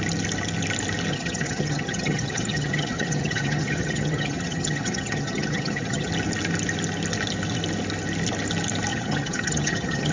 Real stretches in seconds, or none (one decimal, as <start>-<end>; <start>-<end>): 0.0-1.1; 6.1-8.9